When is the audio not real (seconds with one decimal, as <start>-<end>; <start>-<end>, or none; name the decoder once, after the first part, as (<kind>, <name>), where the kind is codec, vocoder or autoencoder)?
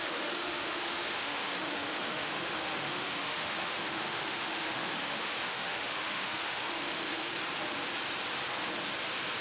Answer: 0.0-7.3 (autoencoder, DAC-VAE)